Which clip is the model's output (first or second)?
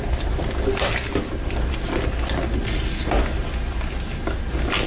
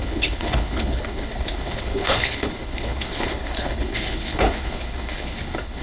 second